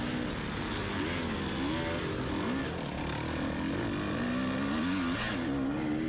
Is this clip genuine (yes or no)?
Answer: yes